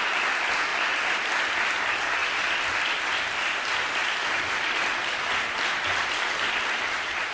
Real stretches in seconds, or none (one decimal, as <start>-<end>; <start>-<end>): 0.0-7.3